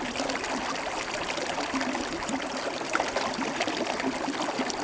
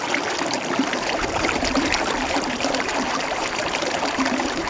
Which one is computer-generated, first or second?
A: second